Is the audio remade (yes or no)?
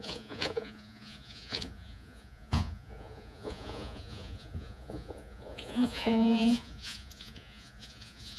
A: yes